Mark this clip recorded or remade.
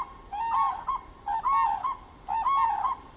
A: recorded